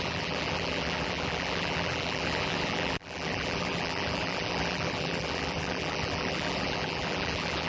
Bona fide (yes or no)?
no